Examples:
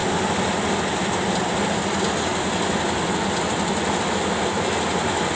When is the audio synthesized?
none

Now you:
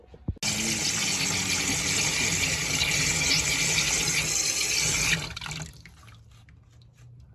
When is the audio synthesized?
none

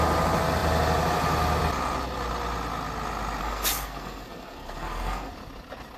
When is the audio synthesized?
3.4-5.3 (codec, SNAC)

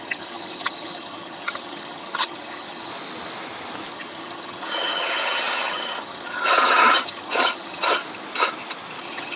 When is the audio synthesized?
0.0-2.9 (vocoder, HiFi-GAN); 3.9-8.0; 9.0-9.4

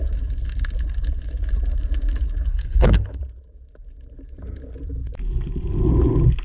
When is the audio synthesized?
2.5-3.2 (codec, HILCodec)

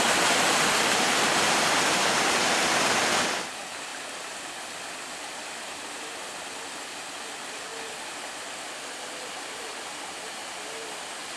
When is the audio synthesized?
none

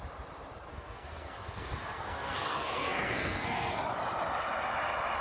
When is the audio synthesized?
0.7-3.8 (codec, SNAC)